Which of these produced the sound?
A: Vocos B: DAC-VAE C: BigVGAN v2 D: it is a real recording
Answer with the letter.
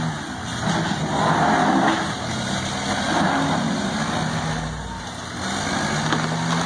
D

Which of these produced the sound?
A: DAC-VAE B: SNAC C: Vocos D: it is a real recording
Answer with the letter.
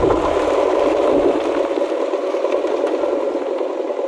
D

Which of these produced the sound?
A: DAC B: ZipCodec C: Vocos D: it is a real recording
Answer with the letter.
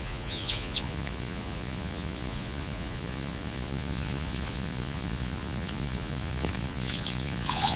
C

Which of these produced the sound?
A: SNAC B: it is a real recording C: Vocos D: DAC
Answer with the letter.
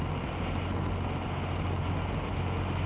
B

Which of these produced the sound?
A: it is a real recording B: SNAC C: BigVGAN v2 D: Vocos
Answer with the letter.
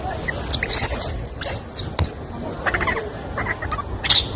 A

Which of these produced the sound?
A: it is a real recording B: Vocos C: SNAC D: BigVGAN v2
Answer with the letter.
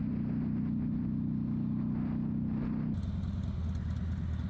A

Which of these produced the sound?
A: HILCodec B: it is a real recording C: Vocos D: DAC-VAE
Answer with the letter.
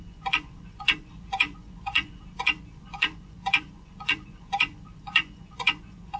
C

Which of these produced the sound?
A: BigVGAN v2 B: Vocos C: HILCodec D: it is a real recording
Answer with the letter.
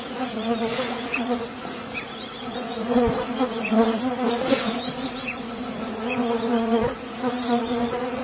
B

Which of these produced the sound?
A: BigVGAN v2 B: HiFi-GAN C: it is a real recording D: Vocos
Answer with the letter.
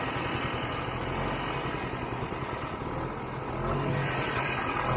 C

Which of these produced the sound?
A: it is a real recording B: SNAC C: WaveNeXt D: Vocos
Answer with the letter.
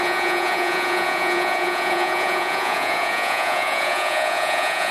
D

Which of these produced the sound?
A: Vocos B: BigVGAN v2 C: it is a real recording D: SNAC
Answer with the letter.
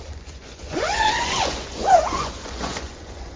A